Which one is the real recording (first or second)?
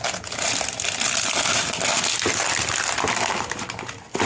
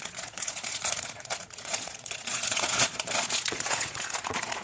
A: first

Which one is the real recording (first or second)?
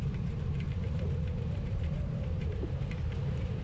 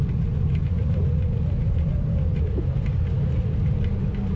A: second